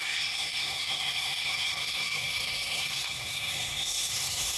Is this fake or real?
fake